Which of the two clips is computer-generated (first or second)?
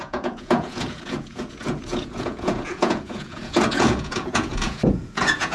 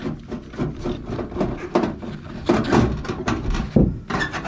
first